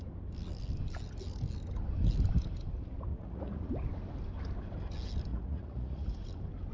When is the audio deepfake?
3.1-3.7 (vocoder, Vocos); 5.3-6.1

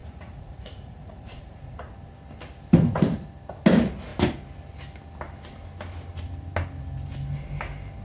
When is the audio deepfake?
0.0-1.9 (vocoder, Vocos)

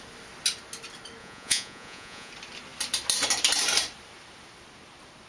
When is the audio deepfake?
1.2-2.3 (vocoder, Vocos)

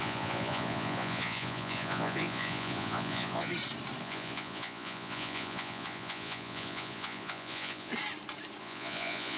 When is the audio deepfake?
0.0-3.5 (vocoder, Vocos); 4.0-7.9; 8.6-9.4

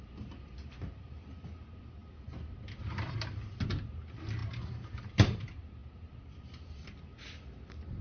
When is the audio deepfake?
none